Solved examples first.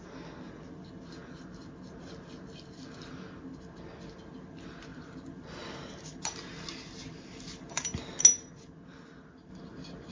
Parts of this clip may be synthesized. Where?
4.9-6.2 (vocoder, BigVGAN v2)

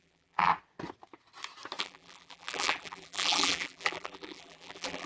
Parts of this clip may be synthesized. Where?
0.0-0.5 (vocoder, BigVGAN v2); 1.8-5.1

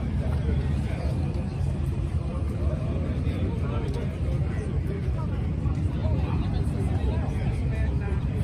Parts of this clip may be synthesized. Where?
0.0-6.0 (vocoder, BigVGAN v2); 7.5-8.4

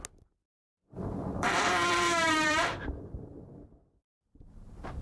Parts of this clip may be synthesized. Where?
0.4-3.4 (vocoder, BigVGAN v2)

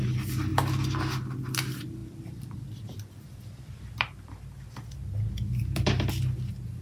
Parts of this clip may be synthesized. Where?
2.0-6.1 (vocoder, BigVGAN v2)